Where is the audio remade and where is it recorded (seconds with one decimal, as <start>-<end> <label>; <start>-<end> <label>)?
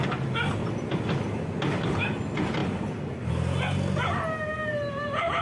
0.0-5.4 recorded